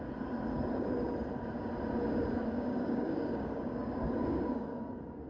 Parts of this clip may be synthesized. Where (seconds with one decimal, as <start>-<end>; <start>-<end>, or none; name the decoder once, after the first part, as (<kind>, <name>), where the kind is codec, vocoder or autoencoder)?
2.4-5.3 (codec, DAC)